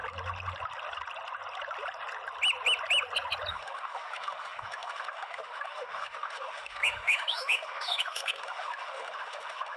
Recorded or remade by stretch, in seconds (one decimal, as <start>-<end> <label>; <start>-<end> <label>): 0.0-3.5 recorded; 3.5-9.8 remade